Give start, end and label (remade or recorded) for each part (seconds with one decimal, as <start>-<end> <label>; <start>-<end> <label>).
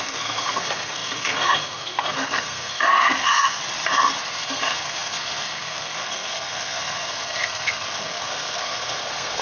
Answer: 0.0-3.6 remade; 3.6-4.3 recorded; 4.3-9.4 remade